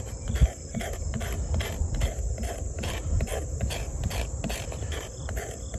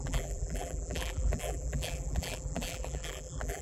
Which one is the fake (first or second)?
second